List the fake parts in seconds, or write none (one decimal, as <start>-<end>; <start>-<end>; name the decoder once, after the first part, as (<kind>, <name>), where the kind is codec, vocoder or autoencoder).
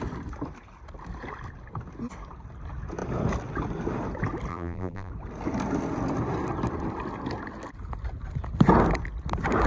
4.5-5.1 (vocoder, BigVGAN v2)